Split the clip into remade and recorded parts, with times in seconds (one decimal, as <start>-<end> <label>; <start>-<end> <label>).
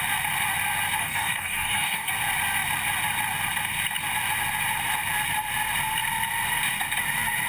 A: 0.0-1.0 recorded; 1.0-2.1 remade; 2.1-7.5 recorded